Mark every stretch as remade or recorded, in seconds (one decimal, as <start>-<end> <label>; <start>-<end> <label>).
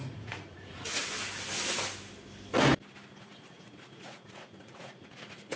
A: 0.0-1.0 remade; 1.0-3.2 recorded; 3.2-5.6 remade